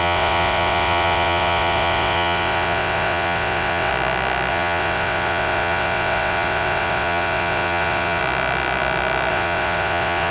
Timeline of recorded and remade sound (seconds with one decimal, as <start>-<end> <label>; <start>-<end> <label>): 0.0-3.9 remade; 3.9-4.5 recorded; 4.5-8.2 remade; 8.2-9.3 recorded; 9.3-10.3 remade